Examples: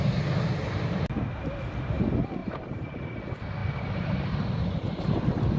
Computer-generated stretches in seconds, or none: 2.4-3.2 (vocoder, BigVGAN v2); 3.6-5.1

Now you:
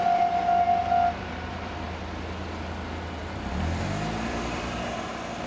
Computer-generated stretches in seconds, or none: 0.8-2.0 (vocoder, BigVGAN v2); 3.2-5.1

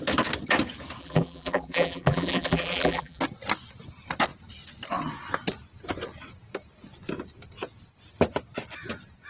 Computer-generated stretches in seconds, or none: 1.0-3.2 (vocoder, BigVGAN v2)